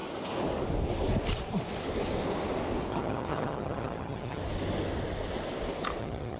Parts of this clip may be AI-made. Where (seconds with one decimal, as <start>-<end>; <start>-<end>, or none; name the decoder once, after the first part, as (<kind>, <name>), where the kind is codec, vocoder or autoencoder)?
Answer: 2.9-4.4 (vocoder, HiFi-GAN); 6.0-6.4